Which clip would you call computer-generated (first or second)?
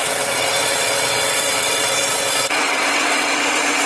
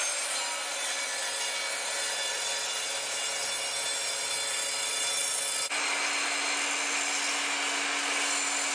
first